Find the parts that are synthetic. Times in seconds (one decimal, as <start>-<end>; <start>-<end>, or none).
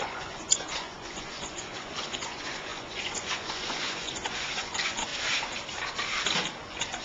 0.0-5.1; 6.6-7.0